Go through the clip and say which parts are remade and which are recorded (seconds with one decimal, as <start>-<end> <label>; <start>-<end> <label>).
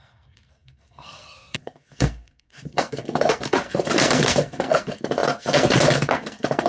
0.0-6.7 remade